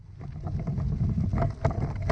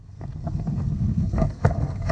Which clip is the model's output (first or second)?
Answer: second